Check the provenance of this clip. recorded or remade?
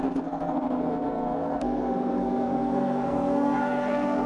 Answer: remade